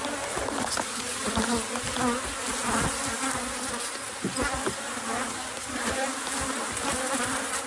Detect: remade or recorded recorded